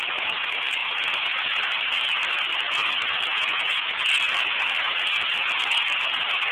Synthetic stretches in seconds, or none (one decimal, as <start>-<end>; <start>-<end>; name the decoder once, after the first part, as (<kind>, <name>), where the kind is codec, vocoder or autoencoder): 3.3-4.0 (vocoder, Vocos)